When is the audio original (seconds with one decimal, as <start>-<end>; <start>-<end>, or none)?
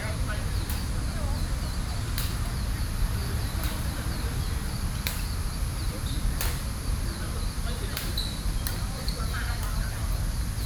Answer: 0.0-3.2; 4.4-5.8; 9.3-10.7